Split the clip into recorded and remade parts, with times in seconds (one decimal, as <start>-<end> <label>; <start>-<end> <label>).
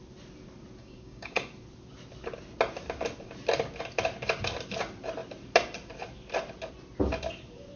0.0-0.8 recorded; 0.8-1.5 remade; 1.5-7.8 recorded